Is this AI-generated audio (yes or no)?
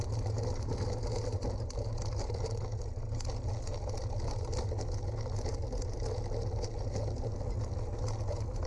no